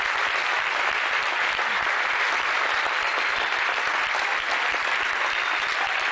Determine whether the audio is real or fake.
real